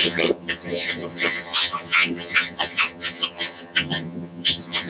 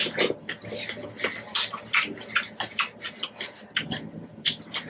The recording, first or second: second